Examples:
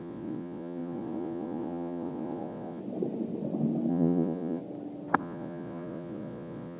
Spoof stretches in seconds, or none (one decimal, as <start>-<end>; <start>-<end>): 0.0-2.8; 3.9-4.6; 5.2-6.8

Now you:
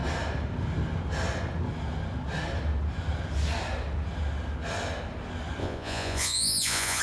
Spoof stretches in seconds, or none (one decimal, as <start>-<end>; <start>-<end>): 5.6-7.0

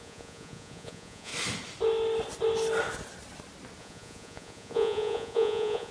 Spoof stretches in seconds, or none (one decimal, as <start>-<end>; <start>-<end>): 0.0-1.3; 3.8-5.9

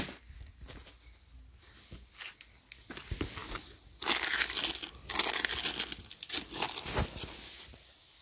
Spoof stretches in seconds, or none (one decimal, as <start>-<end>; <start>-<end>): none

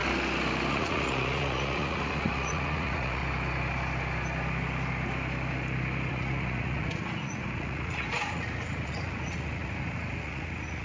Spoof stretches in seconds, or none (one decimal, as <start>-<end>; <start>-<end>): 0.7-3.2; 6.1-10.8

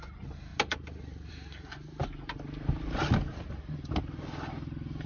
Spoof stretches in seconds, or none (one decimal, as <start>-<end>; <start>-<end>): none